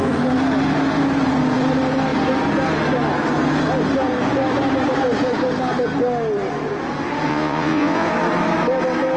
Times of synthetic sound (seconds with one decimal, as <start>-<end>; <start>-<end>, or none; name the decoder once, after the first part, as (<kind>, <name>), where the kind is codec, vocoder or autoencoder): 7.3-8.1 (vocoder, Vocos)